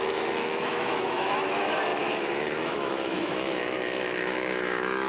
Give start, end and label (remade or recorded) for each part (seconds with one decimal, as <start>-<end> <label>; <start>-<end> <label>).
0.0-5.1 remade